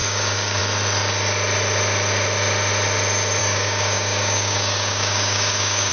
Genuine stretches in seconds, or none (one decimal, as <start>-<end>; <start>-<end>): 0.6-3.4